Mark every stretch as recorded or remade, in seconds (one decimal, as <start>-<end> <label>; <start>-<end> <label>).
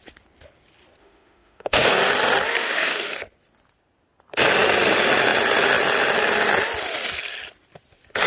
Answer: 0.0-1.0 recorded; 1.0-1.9 remade; 1.9-2.6 recorded; 2.6-3.2 remade; 3.2-8.3 recorded